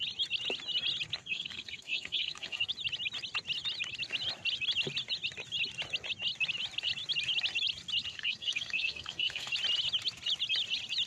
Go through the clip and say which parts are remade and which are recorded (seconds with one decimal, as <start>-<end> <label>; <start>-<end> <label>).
0.0-1.2 recorded; 1.2-2.7 remade; 2.7-8.1 recorded; 8.1-9.5 remade; 9.5-11.1 recorded